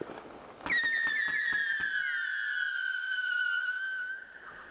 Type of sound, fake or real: real